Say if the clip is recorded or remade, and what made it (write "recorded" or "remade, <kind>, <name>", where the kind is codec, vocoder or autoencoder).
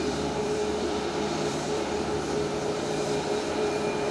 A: remade, vocoder, BigVGAN v2